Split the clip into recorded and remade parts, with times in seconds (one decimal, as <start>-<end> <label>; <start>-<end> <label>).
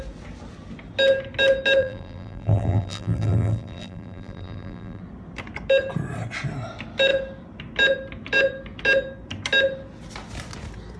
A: 0.0-1.8 recorded; 1.8-5.0 remade; 5.0-11.0 recorded